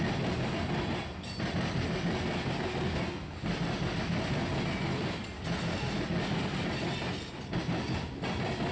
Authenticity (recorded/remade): recorded